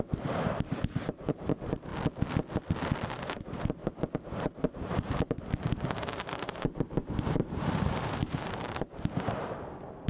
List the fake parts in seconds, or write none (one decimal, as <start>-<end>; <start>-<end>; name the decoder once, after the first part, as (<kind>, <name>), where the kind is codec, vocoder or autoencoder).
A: 0.0-1.9 (vocoder, BigVGAN v2); 3.2-3.8; 4.4-10.1